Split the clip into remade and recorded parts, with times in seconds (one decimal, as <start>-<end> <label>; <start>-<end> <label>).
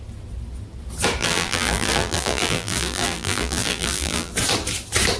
0.0-1.2 recorded; 1.2-4.3 remade; 4.3-5.2 recorded